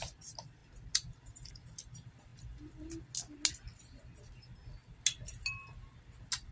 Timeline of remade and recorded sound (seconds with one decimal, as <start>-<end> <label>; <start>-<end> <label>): 0.0-6.5 recorded